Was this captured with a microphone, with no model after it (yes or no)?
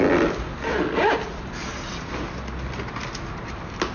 yes